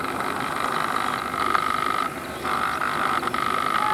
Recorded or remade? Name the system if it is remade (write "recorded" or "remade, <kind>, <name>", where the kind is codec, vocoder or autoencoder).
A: remade, vocoder, BigVGAN v2